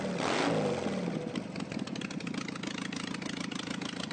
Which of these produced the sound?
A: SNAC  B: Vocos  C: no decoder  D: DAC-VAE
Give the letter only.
C